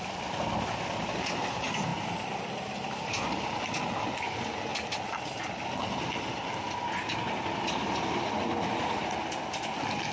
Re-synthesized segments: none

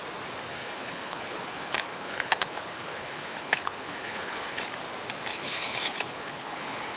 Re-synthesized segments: 0.5-4.7 (codec, HILCodec); 5.3-7.0